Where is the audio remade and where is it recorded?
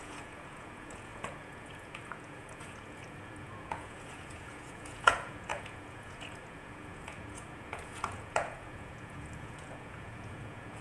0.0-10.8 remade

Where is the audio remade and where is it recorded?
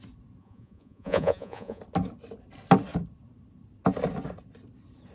0.0-0.4 recorded; 0.4-1.8 remade; 1.8-5.1 recorded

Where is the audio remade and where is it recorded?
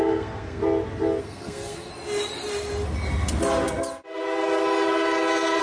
0.0-0.6 remade; 0.6-1.2 recorded; 1.2-1.9 remade; 1.9-5.6 recorded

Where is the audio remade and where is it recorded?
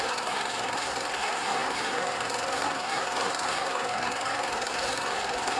0.0-5.6 remade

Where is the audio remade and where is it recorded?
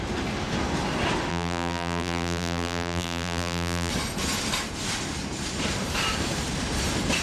0.0-1.3 recorded; 1.3-3.9 remade; 3.9-7.2 recorded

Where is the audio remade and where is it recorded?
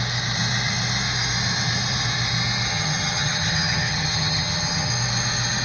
0.0-2.7 recorded; 2.7-4.9 remade; 4.9-5.6 recorded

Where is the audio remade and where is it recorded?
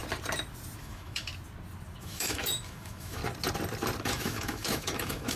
0.0-0.8 recorded; 0.8-1.3 remade; 1.3-2.0 recorded; 2.0-3.2 remade; 3.2-4.0 recorded; 4.0-5.4 remade